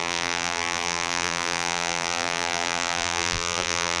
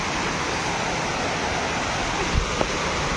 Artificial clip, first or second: first